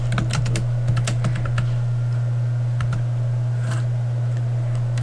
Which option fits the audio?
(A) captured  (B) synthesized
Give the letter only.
A